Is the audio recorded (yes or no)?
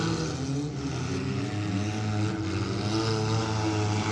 yes